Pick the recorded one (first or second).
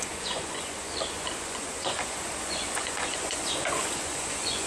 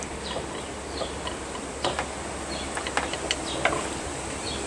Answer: second